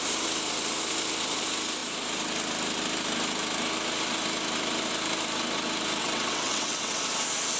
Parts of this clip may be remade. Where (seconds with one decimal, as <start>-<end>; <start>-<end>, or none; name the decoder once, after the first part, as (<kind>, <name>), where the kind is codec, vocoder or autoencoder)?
6.0-7.0 (vocoder, WaveNeXt)